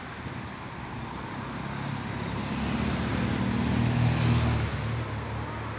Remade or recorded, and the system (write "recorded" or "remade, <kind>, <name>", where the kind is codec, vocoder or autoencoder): recorded